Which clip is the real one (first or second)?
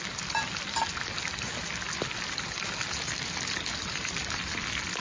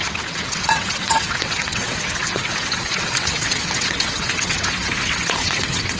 first